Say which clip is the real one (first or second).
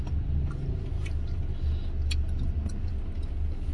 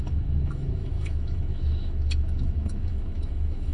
first